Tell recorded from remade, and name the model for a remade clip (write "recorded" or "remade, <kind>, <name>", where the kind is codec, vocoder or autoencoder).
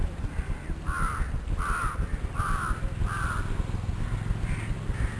recorded